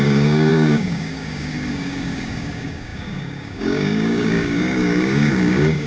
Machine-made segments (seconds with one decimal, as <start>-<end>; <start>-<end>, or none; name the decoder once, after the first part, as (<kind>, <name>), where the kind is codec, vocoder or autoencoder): 0.0-5.9 (codec, DAC)